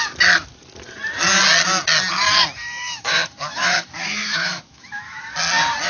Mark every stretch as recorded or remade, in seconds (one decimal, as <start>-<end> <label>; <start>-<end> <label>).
0.0-2.6 recorded; 2.6-5.2 remade; 5.2-5.9 recorded